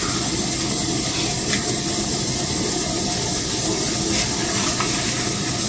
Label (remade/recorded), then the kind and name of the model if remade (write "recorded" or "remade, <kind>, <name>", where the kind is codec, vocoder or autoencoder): recorded